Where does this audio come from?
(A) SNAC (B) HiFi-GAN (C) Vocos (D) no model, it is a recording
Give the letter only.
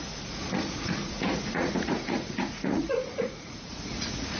C